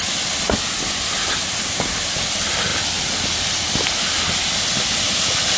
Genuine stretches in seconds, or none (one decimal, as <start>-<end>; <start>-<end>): 0.0-5.6